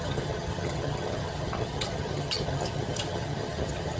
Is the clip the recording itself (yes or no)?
no